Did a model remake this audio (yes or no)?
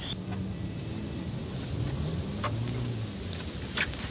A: no